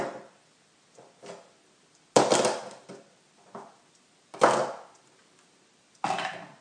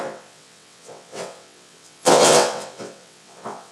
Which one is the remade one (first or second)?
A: second